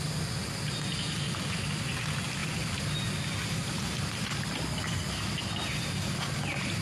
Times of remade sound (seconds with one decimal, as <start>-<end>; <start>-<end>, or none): none